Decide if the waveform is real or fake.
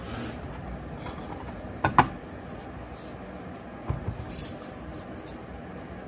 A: real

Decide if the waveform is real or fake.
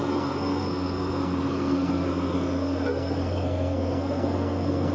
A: fake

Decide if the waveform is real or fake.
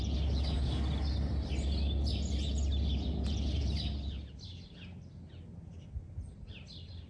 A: real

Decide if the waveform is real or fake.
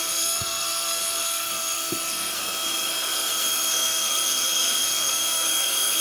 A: fake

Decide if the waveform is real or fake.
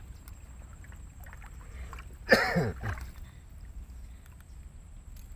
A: real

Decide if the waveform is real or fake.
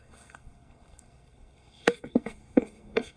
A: fake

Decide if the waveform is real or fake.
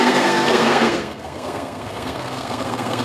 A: fake